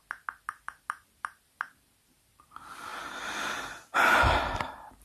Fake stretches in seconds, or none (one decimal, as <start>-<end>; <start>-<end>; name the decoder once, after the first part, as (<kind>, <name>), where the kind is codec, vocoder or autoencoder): none